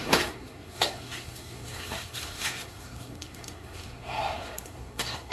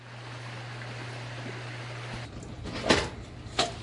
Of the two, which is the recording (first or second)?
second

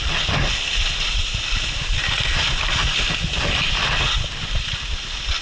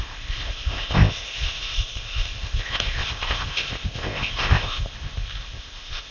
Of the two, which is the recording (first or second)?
first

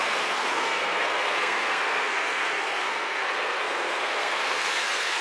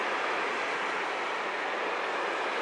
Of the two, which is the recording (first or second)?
second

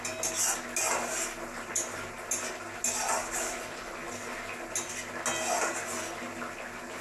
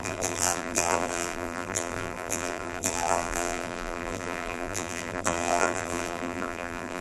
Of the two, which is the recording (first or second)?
first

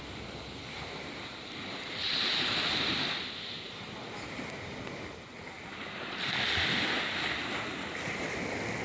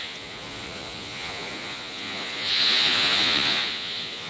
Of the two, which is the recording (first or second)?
first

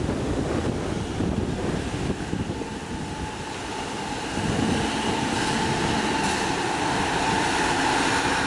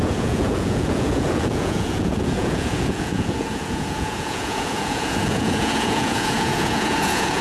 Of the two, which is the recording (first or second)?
first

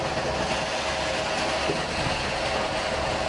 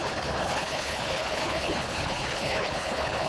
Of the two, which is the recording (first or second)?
first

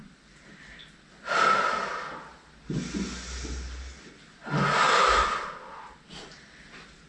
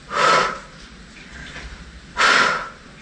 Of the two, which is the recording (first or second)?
first